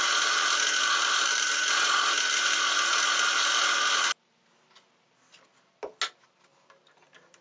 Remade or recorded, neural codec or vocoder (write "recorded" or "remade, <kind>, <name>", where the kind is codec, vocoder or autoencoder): recorded